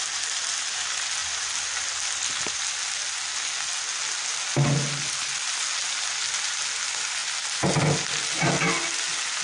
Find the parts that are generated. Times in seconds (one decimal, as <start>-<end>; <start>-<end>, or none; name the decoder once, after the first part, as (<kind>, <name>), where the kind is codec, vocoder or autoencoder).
none